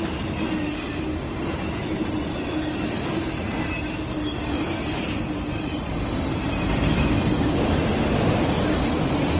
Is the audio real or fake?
real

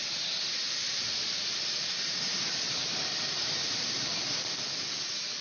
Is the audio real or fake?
fake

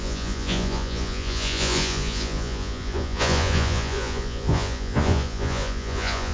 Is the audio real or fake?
fake